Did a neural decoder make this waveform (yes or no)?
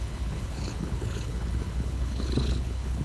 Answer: yes